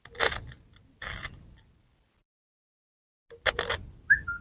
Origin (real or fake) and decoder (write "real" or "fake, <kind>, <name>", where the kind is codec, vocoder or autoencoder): real